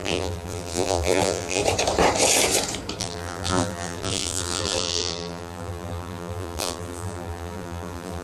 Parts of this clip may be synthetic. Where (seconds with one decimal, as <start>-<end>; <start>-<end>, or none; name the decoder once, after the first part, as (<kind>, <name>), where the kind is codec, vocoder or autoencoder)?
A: 0.0-1.6 (vocoder, BigVGAN v2); 3.0-8.2